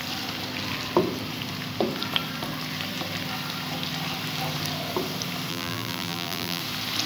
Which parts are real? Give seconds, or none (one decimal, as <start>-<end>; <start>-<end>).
0.0-5.5; 6.6-7.1